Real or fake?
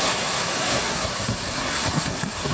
fake